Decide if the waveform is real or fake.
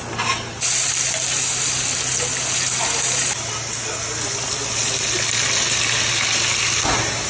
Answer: real